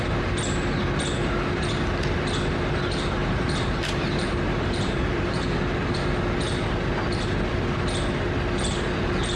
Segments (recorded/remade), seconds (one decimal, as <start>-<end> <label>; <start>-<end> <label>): 0.0-3.2 recorded; 3.2-5.4 remade; 5.4-9.4 recorded